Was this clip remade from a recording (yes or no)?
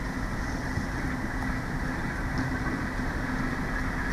no